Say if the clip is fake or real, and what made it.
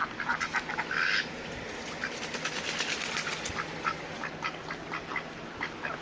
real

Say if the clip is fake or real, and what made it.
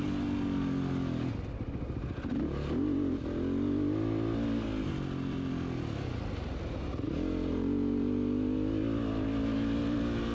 real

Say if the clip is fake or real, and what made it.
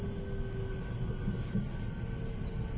real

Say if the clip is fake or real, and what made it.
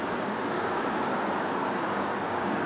fake, codec, DAC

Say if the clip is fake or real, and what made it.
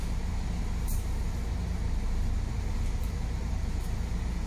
real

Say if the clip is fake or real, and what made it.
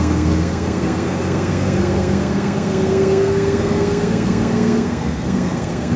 fake, codec, SNAC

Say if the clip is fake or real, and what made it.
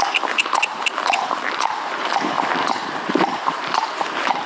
fake, vocoder, BigVGAN v2